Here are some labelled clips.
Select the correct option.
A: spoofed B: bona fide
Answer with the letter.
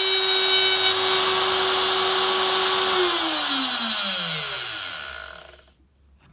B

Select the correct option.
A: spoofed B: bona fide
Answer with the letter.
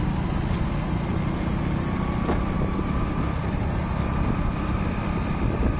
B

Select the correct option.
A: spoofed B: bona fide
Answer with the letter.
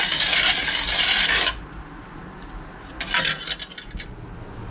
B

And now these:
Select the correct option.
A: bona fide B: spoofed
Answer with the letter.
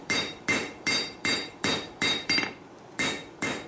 B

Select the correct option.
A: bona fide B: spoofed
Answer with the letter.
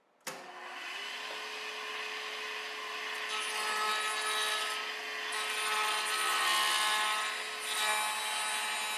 A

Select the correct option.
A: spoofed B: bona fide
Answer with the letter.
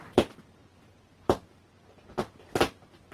B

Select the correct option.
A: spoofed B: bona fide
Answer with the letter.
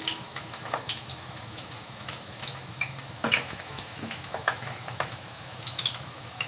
A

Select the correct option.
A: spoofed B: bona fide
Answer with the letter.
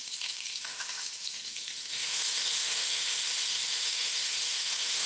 A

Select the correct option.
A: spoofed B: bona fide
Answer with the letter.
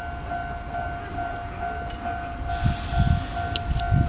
B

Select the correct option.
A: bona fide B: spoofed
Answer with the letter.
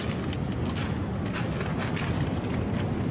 A